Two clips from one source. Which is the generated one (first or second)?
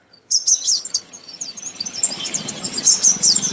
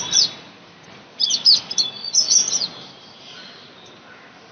first